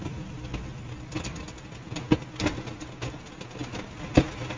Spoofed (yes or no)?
no